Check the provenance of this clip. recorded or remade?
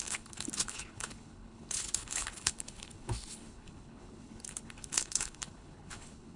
remade